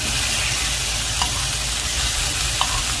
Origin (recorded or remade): recorded